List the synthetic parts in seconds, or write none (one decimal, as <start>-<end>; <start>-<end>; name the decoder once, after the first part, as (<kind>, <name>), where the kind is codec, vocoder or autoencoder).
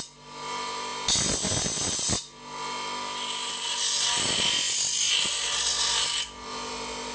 none